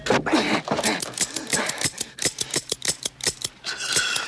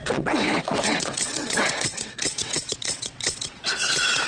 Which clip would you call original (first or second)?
first